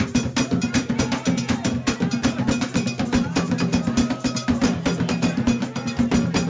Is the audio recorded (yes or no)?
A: yes